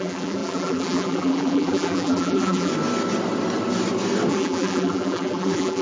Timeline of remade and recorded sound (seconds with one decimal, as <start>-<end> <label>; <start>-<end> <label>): 0.0-2.7 remade; 2.7-4.3 recorded; 4.3-5.8 remade